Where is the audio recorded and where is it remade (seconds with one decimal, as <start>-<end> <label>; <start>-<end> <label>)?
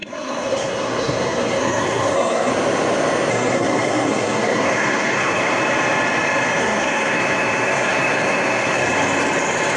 0.0-2.5 remade; 2.5-3.3 recorded; 3.3-5.6 remade; 5.6-6.6 recorded; 6.6-8.8 remade; 8.8-9.8 recorded